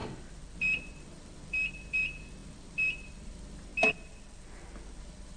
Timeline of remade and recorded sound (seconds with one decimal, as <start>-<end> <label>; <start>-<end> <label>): 0.0-0.6 recorded; 0.6-3.7 remade; 3.7-5.0 recorded; 5.0-5.4 remade